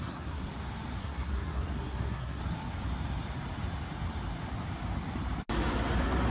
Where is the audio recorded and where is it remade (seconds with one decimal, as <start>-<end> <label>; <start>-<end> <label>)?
0.0-0.5 remade; 0.5-1.0 recorded; 1.0-2.4 remade; 2.4-6.3 recorded